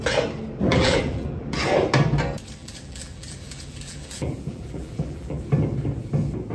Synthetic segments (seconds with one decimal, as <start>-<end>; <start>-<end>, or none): 0.7-1.6; 2.6-5.4